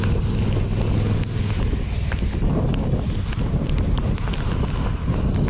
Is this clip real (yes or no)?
yes